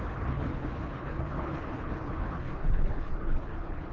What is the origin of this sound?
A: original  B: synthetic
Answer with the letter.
B